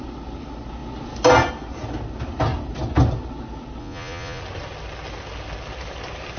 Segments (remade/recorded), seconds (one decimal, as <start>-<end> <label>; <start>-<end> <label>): 0.0-3.8 recorded; 3.8-4.4 remade; 4.4-6.4 recorded